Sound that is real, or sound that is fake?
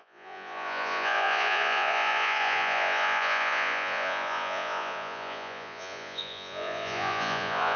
fake